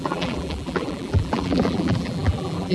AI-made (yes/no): yes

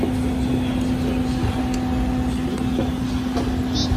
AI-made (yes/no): no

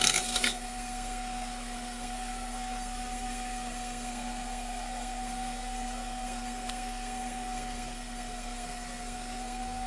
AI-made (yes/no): yes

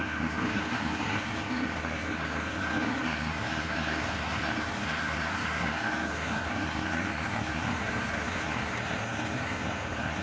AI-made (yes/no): yes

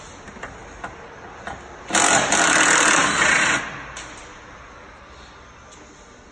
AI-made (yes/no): no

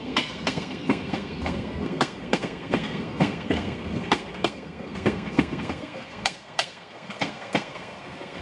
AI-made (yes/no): yes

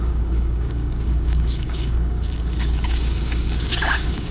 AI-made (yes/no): yes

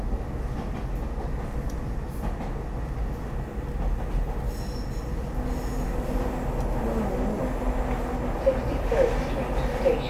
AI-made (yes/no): no